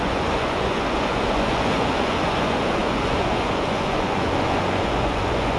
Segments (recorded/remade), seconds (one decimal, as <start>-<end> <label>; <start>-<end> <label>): 0.0-5.6 remade